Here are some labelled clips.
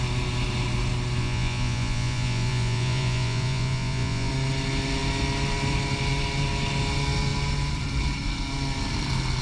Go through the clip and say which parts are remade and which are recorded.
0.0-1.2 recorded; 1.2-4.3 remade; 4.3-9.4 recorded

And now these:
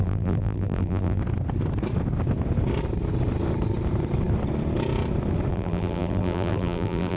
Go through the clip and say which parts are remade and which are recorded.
0.0-1.2 remade; 1.2-5.5 recorded; 5.5-7.2 remade

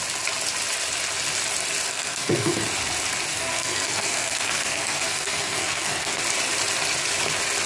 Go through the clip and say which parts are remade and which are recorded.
0.0-1.9 recorded; 1.9-2.6 remade; 2.6-3.3 recorded; 3.3-6.2 remade; 6.2-7.7 recorded